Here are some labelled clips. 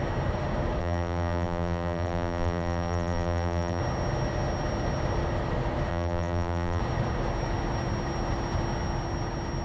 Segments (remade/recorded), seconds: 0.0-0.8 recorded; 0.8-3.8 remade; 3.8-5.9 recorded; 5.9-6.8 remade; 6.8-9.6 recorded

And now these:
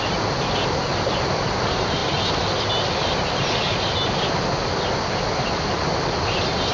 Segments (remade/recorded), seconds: 0.0-6.7 recorded